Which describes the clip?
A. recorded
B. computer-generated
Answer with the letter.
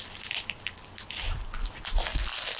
A